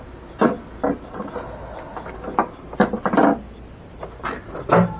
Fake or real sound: real